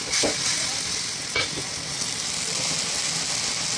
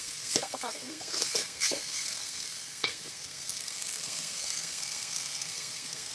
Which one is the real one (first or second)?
first